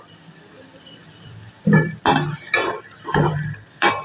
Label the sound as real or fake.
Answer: fake